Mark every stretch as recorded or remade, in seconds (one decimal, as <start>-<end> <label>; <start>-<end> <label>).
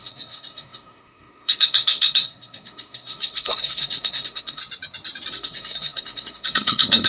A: 0.0-4.6 remade; 4.6-5.3 recorded; 5.3-7.1 remade